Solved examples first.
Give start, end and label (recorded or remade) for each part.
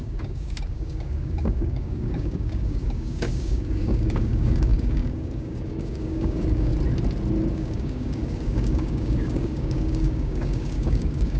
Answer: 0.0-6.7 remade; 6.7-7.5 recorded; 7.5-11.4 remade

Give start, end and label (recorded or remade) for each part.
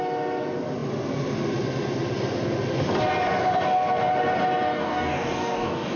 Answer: 0.0-4.8 recorded; 4.8-6.0 remade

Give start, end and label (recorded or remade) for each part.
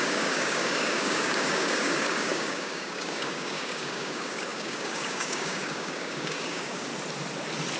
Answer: 0.0-6.9 remade; 6.9-7.8 recorded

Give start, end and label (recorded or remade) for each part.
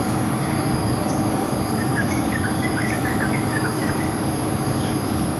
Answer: 0.0-5.4 remade